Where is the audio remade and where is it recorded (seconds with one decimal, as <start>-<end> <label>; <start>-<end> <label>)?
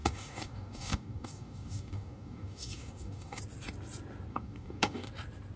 0.0-3.4 remade; 3.4-4.3 recorded; 4.3-5.1 remade; 5.1-5.6 recorded